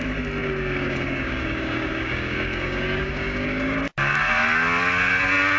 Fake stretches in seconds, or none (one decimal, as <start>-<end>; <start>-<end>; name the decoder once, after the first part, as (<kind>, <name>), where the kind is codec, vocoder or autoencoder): 0.4-3.8 (codec, DAC)